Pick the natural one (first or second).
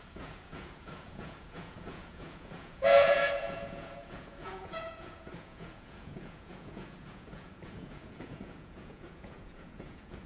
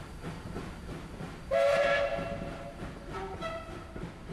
second